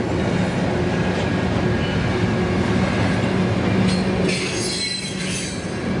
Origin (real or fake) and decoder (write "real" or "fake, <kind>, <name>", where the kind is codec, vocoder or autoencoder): real